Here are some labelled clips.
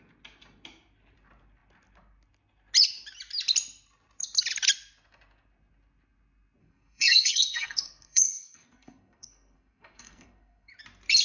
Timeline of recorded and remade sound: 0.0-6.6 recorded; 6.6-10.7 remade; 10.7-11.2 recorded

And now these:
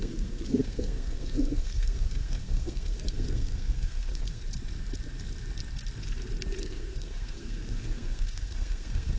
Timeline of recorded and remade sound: 0.0-4.4 remade; 4.4-6.6 recorded; 6.6-9.2 remade

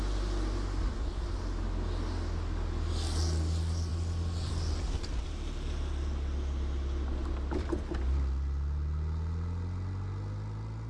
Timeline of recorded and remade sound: 0.0-10.9 recorded

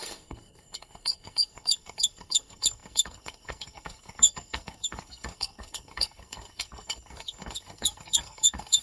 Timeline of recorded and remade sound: 0.0-8.8 remade

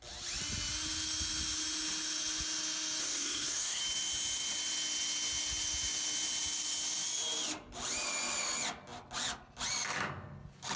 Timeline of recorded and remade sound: 0.0-3.0 recorded; 3.0-3.8 remade; 3.8-10.8 recorded